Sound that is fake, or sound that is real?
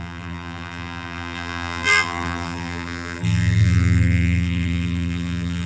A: fake